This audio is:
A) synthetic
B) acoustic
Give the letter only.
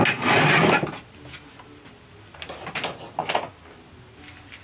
B